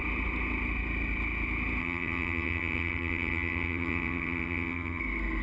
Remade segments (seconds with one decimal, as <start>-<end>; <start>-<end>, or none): 1.8-5.0